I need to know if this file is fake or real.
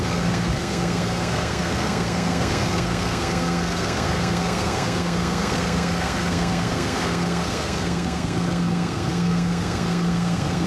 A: fake